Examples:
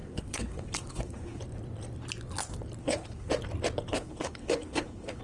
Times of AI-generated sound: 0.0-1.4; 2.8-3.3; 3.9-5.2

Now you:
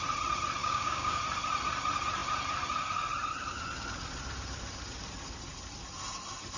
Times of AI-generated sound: 0.6-1.2